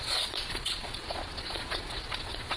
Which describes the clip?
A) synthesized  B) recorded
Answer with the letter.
A